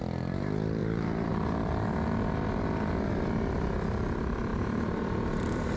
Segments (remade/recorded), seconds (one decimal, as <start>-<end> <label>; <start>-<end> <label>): 0.0-0.8 recorded; 0.8-1.3 remade; 1.3-4.5 recorded; 4.5-5.8 remade